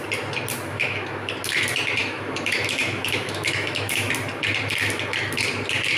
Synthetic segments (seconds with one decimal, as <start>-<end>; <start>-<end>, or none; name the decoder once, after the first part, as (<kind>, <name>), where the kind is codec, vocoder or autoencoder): 0.7-1.3 (autoencoder, DAC-VAE); 2.0-4.1